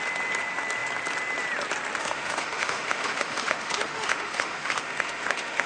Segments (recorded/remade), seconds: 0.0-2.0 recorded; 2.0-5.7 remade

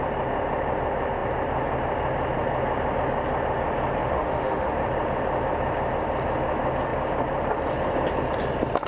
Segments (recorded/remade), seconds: 0.0-4.0 recorded; 4.0-4.7 remade; 4.7-8.9 recorded

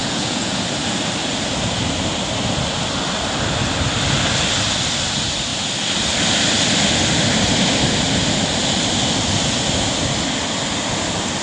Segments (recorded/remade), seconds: 0.0-0.6 remade; 0.6-11.4 recorded

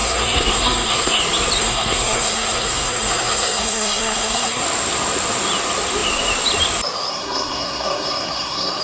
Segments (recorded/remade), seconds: 0.0-1.2 remade; 1.2-1.6 recorded; 1.6-4.6 remade; 4.6-7.1 recorded; 7.1-8.8 remade

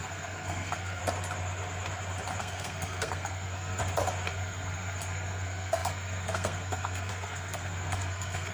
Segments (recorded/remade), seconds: 0.0-1.0 remade; 1.0-2.4 recorded; 2.4-3.8 remade; 3.8-4.3 recorded; 4.3-8.5 remade

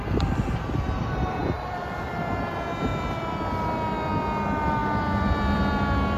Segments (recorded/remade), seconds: 0.0-1.4 recorded; 1.4-2.5 remade; 2.5-2.9 recorded; 2.9-3.4 remade; 3.4-4.8 recorded; 4.8-6.2 remade

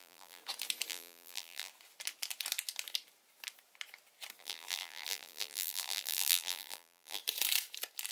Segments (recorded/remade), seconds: 0.0-0.4 remade; 0.4-0.9 recorded; 0.9-1.7 remade; 1.7-4.4 recorded; 4.4-7.2 remade; 7.2-8.1 recorded

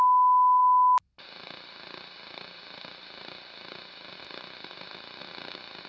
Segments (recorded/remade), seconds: 0.0-5.9 recorded